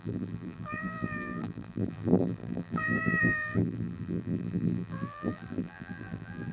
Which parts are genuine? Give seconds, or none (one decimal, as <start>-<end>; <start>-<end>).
none